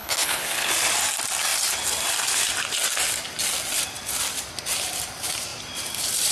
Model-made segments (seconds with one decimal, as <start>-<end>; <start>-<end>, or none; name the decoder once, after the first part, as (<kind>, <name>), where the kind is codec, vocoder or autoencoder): 0.0-0.7 (codec, HILCodec)